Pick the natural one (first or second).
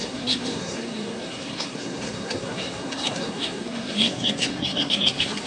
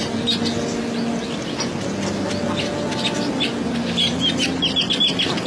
second